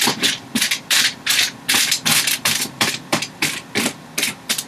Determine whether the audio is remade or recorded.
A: remade